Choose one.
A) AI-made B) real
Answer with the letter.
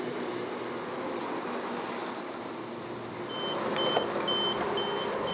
B